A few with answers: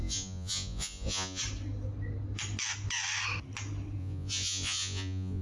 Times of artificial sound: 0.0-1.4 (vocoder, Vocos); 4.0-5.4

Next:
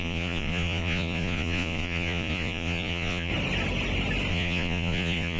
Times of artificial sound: 0.0-3.3 (vocoder, Vocos); 4.3-5.4

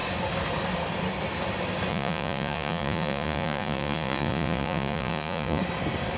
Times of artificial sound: 1.9-5.6 (vocoder, Vocos)

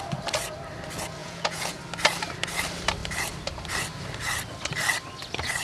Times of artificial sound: 1.2-1.8 (vocoder, Vocos)

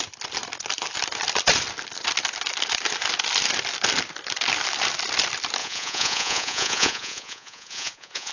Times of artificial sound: 5.6-8.3 (vocoder, Vocos)

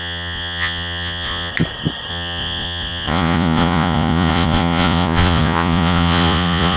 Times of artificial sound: 0.0-1.5 (vocoder, Vocos); 2.1-6.8